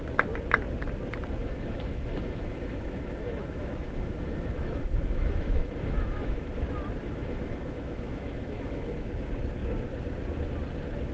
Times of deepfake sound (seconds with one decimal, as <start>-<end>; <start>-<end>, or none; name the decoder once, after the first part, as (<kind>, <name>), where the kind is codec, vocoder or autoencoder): 1.4-6.5 (autoencoder, DAC-VAE); 7.0-9.1